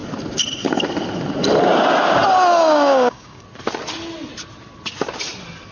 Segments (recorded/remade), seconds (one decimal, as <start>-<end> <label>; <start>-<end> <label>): 0.0-2.5 recorded; 2.5-3.4 remade; 3.4-5.7 recorded